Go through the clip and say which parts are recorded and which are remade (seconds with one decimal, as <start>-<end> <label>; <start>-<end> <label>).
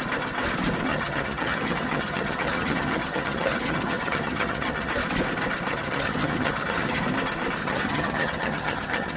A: 0.0-0.9 recorded; 0.9-4.9 remade; 4.9-5.7 recorded; 5.7-7.0 remade; 7.0-7.6 recorded; 7.6-9.2 remade